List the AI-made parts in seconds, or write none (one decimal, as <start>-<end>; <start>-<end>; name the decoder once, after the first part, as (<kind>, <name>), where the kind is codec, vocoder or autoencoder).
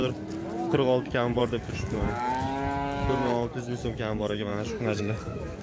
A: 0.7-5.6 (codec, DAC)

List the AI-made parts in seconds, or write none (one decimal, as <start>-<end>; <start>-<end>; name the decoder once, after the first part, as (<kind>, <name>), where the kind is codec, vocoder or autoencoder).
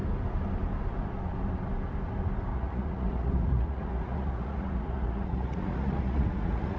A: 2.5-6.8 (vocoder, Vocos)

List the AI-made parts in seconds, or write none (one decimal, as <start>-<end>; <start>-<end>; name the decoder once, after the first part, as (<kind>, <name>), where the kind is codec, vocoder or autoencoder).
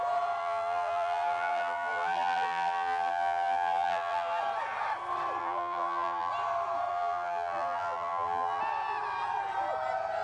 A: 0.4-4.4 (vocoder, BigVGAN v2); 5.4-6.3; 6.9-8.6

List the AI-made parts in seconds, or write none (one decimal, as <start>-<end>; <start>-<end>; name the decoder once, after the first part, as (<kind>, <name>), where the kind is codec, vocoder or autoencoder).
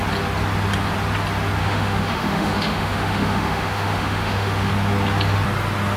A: 1.6-4.7 (autoencoder, DAC-VAE)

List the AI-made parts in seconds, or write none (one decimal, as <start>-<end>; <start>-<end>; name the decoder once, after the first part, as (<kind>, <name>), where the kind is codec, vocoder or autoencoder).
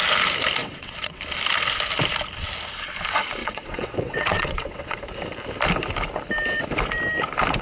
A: 0.6-1.2 (vocoder, WaveNeXt); 3.4-5.0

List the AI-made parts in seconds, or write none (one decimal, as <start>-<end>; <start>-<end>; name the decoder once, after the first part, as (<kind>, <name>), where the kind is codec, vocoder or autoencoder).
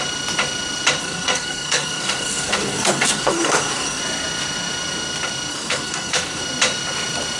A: 1.0-4.0 (codec, SNAC); 5.5-6.4